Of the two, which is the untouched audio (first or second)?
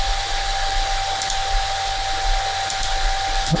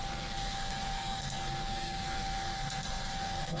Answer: first